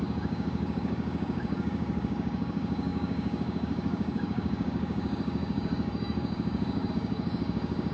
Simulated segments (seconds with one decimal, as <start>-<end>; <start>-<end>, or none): 0.0-7.9